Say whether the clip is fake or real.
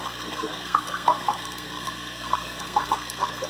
fake